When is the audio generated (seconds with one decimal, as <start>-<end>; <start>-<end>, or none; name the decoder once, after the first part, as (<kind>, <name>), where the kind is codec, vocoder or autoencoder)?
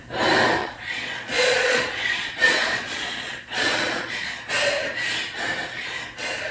0.6-4.5 (vocoder, Vocos)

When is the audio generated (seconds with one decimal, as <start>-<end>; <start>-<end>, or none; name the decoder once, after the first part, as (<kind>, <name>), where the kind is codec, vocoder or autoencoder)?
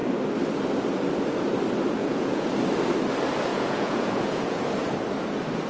2.0-2.5 (vocoder, Vocos); 3.5-4.6